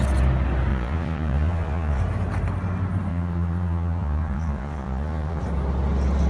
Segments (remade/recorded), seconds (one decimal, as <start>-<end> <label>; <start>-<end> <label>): 0.0-0.7 recorded; 0.7-2.0 remade; 2.0-3.1 recorded; 3.1-5.4 remade; 5.4-6.3 recorded